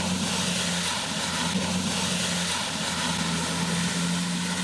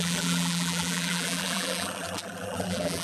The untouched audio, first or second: first